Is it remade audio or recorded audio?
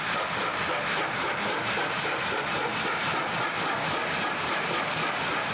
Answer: recorded